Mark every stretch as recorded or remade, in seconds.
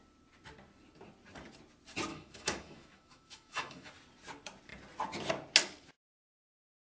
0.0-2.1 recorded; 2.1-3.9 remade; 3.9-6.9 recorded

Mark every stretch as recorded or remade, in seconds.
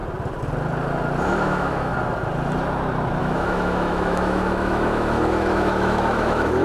0.0-1.2 recorded; 1.2-1.9 remade; 1.9-3.2 recorded; 3.2-6.6 remade